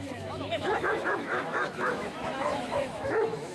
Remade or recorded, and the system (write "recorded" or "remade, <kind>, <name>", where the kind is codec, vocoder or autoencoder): remade, autoencoder, DAC-VAE